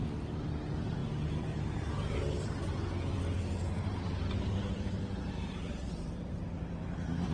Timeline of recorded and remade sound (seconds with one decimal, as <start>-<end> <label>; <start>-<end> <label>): 0.0-7.3 recorded